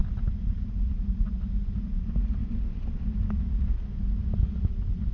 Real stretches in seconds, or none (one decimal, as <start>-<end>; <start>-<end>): 0.0-5.1